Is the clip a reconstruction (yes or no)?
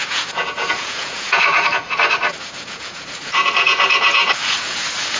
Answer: yes